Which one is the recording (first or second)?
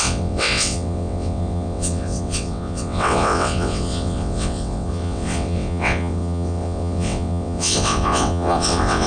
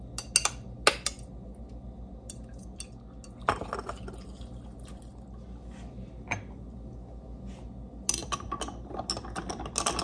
second